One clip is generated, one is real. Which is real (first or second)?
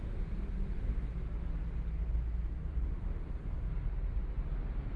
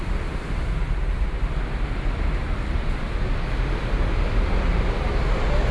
first